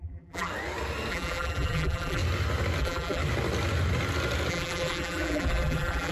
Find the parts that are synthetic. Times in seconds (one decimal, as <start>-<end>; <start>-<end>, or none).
0.0-0.5; 1.1-2.2; 2.8-3.2; 4.5-6.1